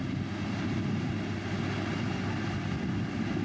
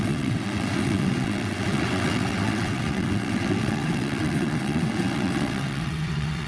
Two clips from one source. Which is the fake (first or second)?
second